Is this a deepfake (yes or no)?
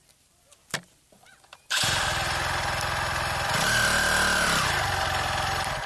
yes